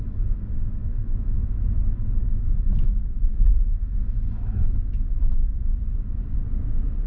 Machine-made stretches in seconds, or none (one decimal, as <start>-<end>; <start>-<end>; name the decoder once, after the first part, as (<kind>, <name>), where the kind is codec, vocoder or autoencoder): 0.8-4.7 (autoencoder, DAC-VAE)